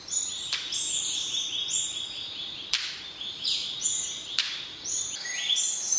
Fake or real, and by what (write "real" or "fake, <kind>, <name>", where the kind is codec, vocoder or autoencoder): fake, vocoder, BigVGAN v2